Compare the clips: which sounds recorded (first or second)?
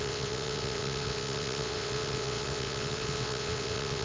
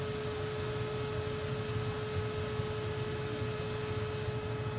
second